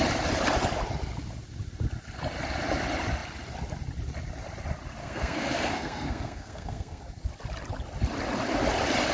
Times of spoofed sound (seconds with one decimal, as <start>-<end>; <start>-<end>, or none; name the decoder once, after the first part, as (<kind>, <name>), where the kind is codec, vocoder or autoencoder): 5.0-7.0 (codec, SNAC)